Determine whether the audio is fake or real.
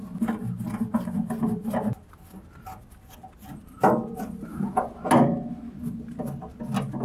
real